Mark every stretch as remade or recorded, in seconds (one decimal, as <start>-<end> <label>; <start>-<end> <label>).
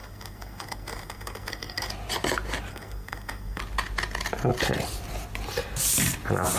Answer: 0.0-1.9 remade; 1.9-2.7 recorded; 2.7-3.6 remade; 3.6-6.6 recorded